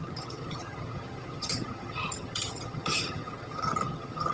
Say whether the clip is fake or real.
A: fake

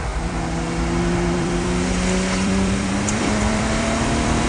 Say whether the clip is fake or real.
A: fake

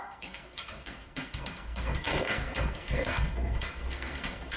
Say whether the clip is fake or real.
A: fake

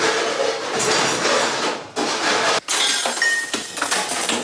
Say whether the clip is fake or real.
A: real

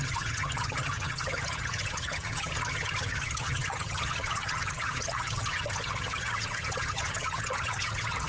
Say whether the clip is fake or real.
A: fake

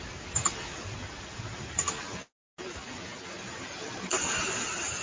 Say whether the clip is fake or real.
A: real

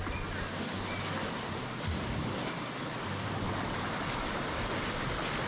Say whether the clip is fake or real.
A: real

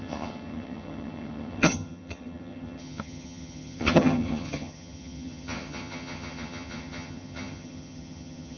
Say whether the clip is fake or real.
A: fake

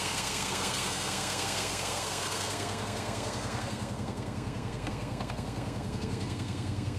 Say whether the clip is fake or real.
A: fake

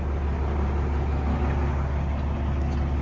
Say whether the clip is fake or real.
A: real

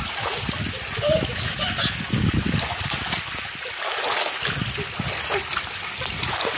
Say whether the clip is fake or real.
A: real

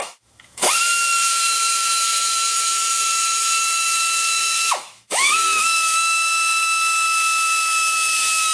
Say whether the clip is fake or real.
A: fake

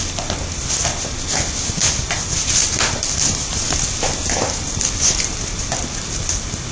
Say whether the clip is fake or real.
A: real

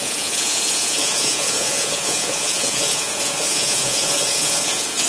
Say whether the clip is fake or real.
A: fake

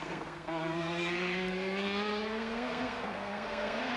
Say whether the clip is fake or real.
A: fake